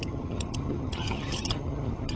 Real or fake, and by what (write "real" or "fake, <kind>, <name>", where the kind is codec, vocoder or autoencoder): fake, vocoder, HiFi-GAN